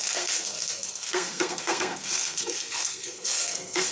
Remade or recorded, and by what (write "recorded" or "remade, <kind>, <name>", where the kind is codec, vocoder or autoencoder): remade, codec, SNAC